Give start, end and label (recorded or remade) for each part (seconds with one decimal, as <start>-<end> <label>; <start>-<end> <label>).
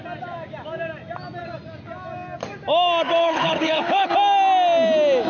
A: 0.0-3.2 recorded; 3.2-4.1 remade; 4.1-5.3 recorded